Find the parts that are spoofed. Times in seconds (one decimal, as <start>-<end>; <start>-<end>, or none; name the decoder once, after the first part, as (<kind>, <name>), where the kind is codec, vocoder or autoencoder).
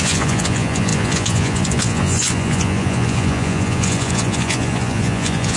0.0-5.6 (vocoder, Vocos)